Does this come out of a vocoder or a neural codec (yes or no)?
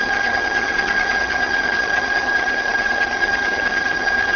yes